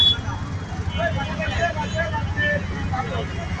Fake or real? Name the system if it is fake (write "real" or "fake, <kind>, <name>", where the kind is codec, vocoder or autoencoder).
real